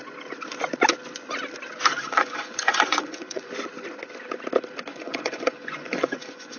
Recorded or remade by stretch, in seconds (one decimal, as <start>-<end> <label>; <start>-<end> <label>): 0.0-1.9 recorded; 1.9-3.5 remade; 3.5-4.9 recorded; 4.9-6.6 remade